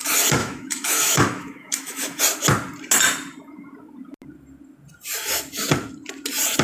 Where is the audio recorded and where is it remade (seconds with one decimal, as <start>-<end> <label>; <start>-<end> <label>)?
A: 0.0-0.4 recorded; 0.4-2.2 remade; 2.2-6.6 recorded